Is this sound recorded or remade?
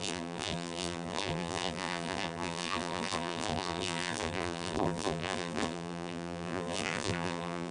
remade